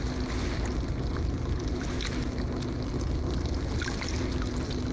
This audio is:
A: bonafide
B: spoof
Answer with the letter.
A